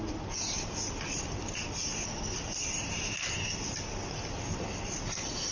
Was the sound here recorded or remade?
recorded